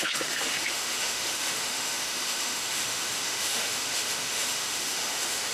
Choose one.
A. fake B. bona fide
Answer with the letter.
A